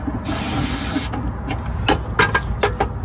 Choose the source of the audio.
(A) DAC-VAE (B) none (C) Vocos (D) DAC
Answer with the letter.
B